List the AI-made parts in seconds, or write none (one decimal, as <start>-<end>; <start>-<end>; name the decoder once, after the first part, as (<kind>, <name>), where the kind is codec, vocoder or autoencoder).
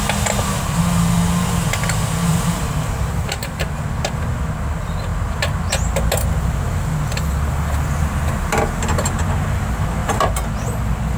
2.2-3.7 (vocoder, BigVGAN v2); 10.0-10.5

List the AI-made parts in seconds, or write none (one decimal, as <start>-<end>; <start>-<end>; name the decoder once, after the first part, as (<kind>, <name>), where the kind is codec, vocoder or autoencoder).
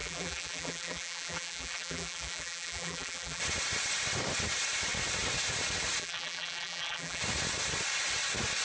0.0-3.4 (vocoder, BigVGAN v2); 6.0-7.2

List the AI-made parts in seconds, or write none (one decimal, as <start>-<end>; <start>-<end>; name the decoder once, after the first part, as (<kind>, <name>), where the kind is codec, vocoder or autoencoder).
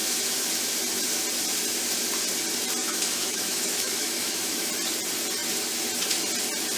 0.0-0.5 (autoencoder, DAC-VAE); 2.8-4.7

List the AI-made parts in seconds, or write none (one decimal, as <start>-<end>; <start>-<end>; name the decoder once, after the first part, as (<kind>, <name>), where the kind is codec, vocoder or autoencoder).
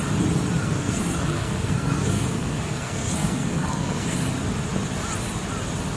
0.6-4.2 (codec, SNAC)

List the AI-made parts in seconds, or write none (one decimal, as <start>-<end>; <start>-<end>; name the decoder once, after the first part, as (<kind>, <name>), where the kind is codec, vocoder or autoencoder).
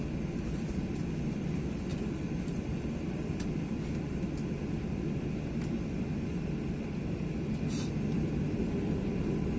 none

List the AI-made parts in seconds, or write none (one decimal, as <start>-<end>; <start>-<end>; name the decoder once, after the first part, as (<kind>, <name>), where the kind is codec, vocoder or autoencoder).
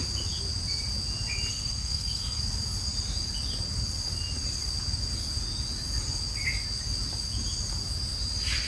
1.5-2.4 (codec, SNAC)